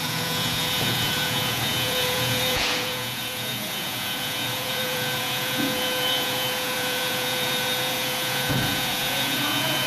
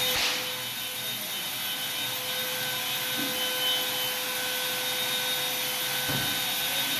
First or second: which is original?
second